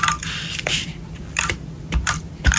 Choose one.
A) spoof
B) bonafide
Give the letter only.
B